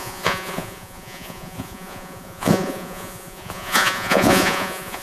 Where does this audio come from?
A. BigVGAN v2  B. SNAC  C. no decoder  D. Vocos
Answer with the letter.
D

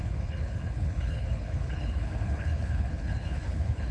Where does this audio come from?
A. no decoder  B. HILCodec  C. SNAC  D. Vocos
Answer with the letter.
B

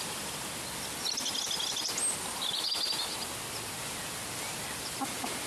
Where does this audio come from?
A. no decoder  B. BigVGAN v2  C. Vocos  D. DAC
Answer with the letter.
A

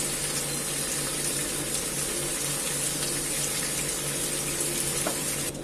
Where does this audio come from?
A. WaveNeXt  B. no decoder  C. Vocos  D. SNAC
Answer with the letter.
B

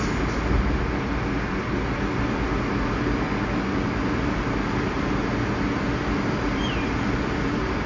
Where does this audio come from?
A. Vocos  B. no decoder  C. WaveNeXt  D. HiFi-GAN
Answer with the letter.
B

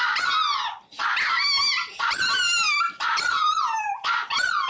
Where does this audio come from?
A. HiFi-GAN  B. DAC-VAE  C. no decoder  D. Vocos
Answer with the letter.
C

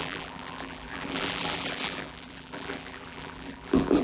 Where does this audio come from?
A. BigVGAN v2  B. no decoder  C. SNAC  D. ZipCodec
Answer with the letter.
A